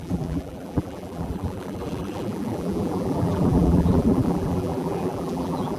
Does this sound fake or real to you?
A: fake